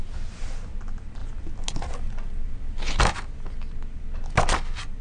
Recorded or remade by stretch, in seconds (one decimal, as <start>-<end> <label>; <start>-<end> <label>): 0.0-5.0 recorded